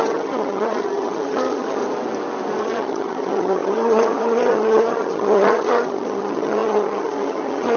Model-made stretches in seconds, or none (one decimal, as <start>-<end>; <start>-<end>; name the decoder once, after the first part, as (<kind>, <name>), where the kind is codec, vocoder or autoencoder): 0.0-1.8 (vocoder, HiFi-GAN); 2.6-7.8